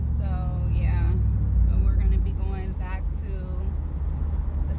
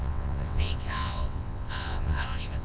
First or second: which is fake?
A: second